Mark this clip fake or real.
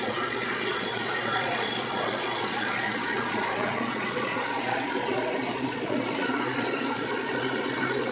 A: fake